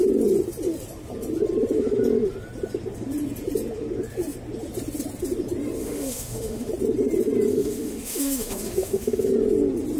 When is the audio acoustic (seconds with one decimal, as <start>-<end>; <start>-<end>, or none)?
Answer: 0.0-5.8; 6.7-7.5; 9.3-10.0